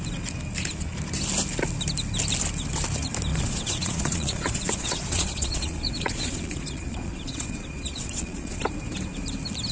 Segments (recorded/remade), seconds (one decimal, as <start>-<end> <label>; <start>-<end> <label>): 0.0-3.3 recorded; 3.3-8.6 remade; 8.6-9.7 recorded